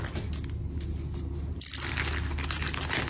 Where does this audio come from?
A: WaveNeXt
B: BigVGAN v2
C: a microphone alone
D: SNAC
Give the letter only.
C